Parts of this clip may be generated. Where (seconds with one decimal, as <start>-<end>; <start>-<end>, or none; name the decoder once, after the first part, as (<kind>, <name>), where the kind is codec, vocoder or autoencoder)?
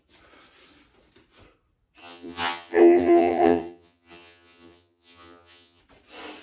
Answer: 2.0-5.8 (vocoder, HiFi-GAN)